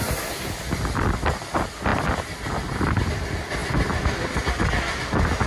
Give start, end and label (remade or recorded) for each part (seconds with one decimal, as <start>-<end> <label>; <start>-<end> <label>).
0.0-5.5 recorded